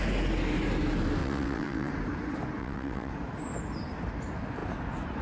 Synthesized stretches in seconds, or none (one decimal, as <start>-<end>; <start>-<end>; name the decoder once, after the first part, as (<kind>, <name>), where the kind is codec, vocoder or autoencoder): 1.2-1.9 (vocoder, WaveNeXt); 2.6-3.1